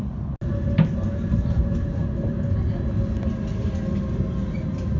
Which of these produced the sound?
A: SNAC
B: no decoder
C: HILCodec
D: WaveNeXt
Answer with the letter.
B